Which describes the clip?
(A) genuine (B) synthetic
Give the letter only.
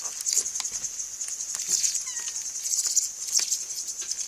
A